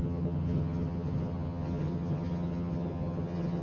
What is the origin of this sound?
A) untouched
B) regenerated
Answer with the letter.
B